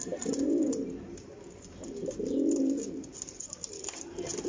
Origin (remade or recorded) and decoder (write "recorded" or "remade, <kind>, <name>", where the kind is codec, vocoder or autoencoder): recorded